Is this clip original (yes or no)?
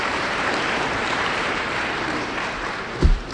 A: no